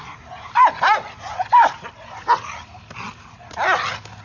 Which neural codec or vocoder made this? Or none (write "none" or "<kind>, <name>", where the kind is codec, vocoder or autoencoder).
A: none